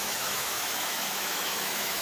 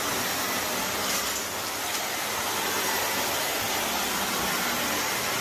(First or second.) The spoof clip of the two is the first